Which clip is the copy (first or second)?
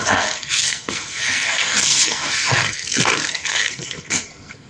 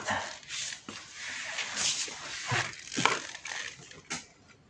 first